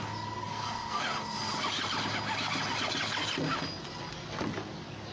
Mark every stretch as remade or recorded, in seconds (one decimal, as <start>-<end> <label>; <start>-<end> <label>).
0.0-0.4 recorded; 0.4-1.0 remade; 1.0-5.1 recorded